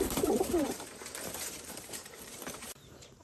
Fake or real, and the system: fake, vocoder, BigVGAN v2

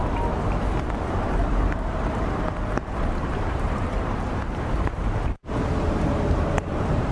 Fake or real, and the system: fake, vocoder, BigVGAN v2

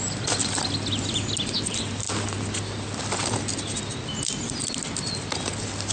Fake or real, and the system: real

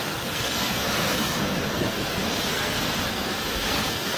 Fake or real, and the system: fake, codec, SNAC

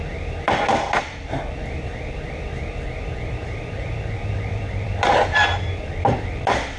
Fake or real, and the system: fake, vocoder, BigVGAN v2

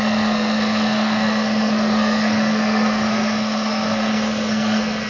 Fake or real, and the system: fake, codec, SNAC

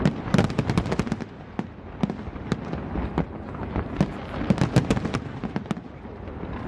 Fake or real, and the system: real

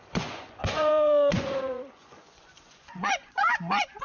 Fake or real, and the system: fake, vocoder, Vocos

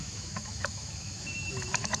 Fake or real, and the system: fake, autoencoder, DAC-VAE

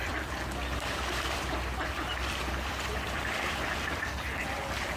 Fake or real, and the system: fake, vocoder, BigVGAN v2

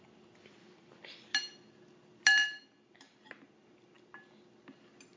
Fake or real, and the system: real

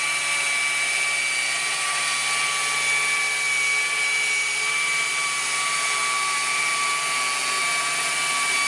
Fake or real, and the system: real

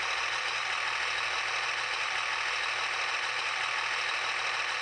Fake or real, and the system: real